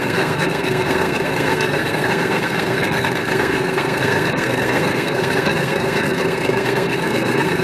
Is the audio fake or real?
fake